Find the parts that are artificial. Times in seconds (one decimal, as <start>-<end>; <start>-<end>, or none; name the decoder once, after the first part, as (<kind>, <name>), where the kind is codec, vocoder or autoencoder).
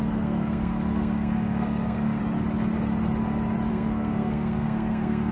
0.0-2.2 (codec, SNAC); 3.7-5.3